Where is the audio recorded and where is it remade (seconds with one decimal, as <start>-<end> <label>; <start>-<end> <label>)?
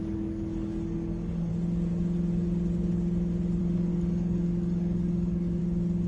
0.0-1.5 remade; 1.5-3.6 recorded; 3.6-5.6 remade; 5.6-6.1 recorded